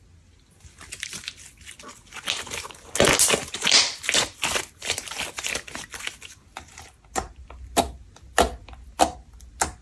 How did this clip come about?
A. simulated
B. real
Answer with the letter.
B